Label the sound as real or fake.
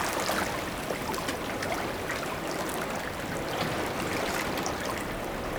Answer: real